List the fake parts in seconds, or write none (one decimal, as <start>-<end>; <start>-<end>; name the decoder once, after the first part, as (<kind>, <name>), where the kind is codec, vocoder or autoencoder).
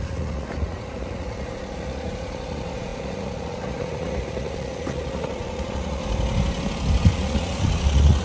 0.0-6.0 (vocoder, Vocos); 7.1-8.2